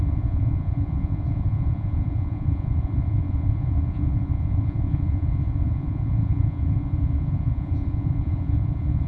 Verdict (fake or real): fake